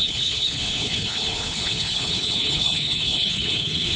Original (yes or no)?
no